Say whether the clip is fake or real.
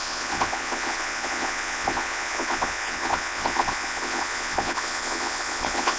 fake